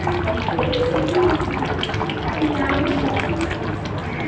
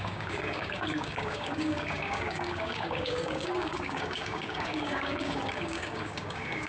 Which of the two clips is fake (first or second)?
second